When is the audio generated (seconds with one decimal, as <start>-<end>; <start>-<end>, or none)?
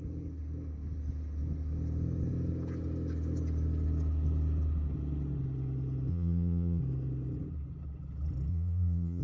6.1-6.8; 8.5-9.2